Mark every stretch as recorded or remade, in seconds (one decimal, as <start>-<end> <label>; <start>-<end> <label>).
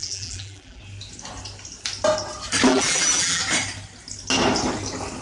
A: 0.0-0.8 remade; 0.8-2.7 recorded; 2.7-3.4 remade; 3.4-5.2 recorded